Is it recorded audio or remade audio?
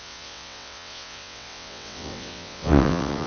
remade